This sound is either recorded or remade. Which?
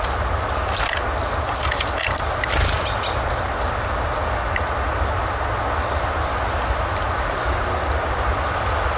recorded